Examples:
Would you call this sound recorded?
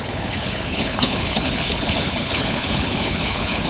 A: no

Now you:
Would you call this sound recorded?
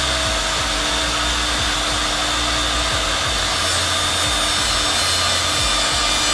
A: yes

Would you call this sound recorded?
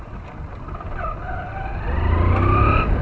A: yes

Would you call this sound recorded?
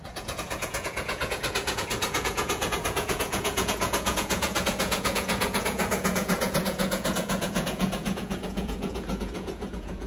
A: no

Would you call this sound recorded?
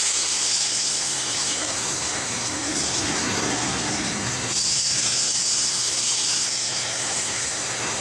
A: no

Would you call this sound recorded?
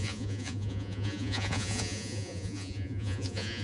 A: no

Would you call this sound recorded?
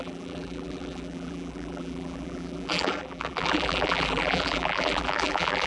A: no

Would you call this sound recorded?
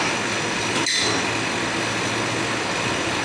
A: yes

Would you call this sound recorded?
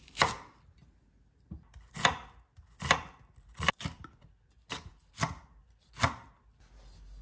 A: yes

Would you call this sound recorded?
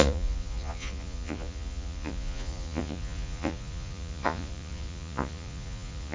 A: no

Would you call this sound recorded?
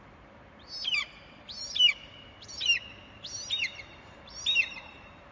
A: no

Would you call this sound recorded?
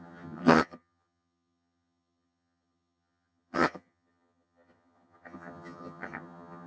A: no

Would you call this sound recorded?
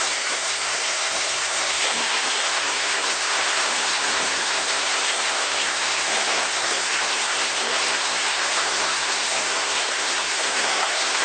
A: no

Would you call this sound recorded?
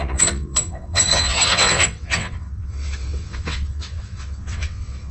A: no